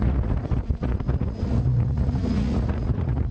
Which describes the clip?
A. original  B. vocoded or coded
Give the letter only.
B